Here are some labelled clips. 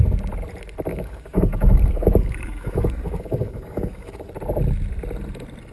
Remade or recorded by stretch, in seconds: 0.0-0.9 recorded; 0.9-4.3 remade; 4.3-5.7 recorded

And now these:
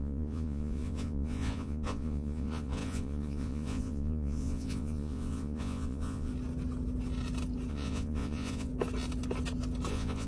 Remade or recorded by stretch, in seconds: 0.0-6.3 remade; 6.3-7.7 recorded; 7.7-8.7 remade; 8.7-9.9 recorded; 9.9-10.3 remade

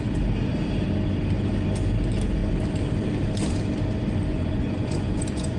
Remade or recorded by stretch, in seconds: 0.0-4.3 recorded; 4.3-5.6 remade

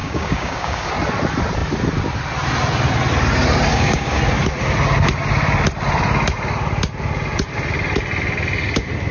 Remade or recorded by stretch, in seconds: 0.0-0.9 remade; 0.9-3.7 recorded; 3.7-4.2 remade; 4.2-9.1 recorded

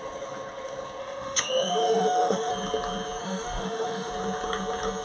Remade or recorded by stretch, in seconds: 0.0-1.0 recorded; 1.0-2.5 remade; 2.5-3.2 recorded; 3.2-4.1 remade; 4.1-5.0 recorded